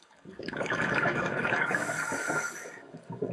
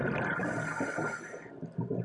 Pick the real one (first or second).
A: second